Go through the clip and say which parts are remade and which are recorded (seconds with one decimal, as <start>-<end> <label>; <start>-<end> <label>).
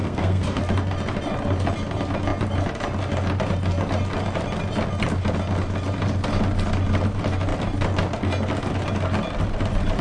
0.0-0.6 remade; 0.6-10.0 recorded